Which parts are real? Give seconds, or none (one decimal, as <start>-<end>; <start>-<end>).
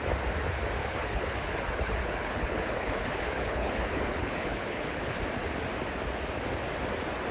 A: 0.0-0.8; 5.2-7.3